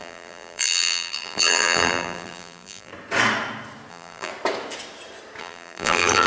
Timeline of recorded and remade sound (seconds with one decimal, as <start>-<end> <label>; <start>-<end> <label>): 0.0-2.9 remade; 2.9-3.9 recorded; 3.9-4.3 remade; 4.3-5.4 recorded; 5.4-6.3 remade